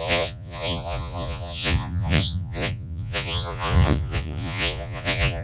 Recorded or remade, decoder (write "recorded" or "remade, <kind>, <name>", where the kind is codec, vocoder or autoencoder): remade, vocoder, Vocos